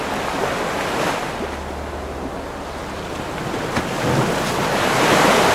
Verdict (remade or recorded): recorded